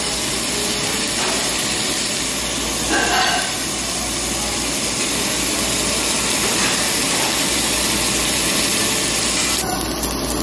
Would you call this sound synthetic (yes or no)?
no